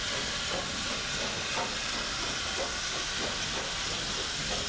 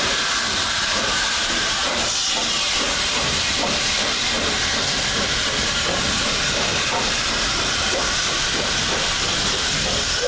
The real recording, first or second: first